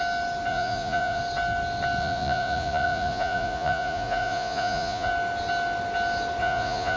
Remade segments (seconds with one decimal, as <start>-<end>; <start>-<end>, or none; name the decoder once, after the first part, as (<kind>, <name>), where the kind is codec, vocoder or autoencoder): 0.5-1.2 (vocoder, Vocos); 2.0-5.1; 6.4-7.0